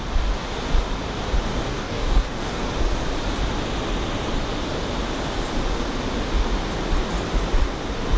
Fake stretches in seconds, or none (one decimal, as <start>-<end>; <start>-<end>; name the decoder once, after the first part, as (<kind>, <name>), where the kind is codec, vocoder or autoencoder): 1.7-2.5 (codec, DAC)